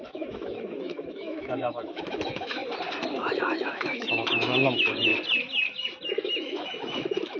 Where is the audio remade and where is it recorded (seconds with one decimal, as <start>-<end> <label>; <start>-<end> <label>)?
0.0-2.6 remade; 2.6-3.4 recorded; 3.4-5.1 remade; 5.1-6.1 recorded; 6.1-7.4 remade